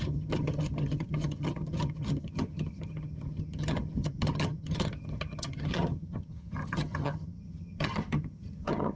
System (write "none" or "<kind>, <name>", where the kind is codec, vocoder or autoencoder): vocoder, HiFi-GAN